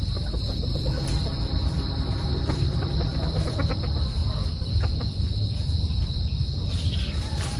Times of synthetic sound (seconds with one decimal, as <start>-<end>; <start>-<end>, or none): none